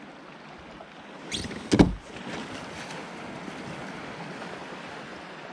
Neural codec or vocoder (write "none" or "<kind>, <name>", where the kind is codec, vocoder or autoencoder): none